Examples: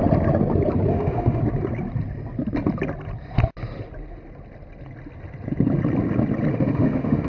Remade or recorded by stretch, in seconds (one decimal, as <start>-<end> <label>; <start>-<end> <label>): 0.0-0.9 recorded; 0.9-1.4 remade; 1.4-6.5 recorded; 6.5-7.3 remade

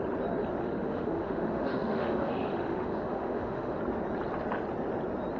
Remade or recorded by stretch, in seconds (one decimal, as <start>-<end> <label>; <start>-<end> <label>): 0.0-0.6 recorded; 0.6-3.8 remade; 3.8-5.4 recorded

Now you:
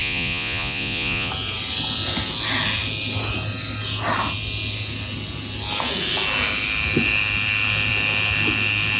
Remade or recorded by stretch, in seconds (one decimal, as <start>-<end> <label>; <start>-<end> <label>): 0.0-1.3 remade; 1.3-9.0 recorded